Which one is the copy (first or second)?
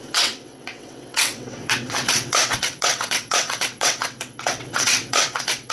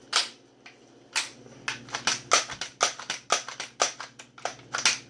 first